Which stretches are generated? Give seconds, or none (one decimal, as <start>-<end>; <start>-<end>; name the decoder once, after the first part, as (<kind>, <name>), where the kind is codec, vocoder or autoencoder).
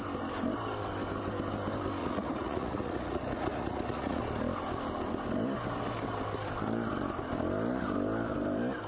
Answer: 2.0-4.2 (vocoder, Vocos)